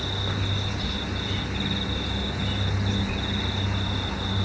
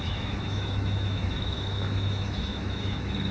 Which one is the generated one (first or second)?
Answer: second